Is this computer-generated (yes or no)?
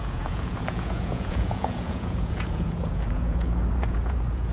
yes